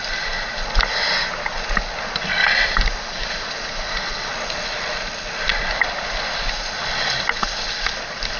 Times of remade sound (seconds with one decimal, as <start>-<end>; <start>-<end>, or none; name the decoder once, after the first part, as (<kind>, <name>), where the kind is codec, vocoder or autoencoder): none